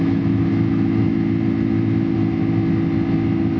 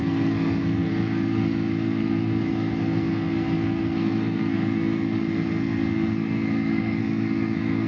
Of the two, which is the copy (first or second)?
second